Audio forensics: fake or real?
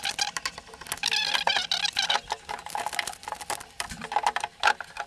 real